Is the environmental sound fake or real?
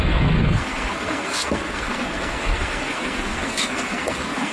fake